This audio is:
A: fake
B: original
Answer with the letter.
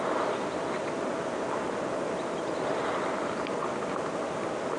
B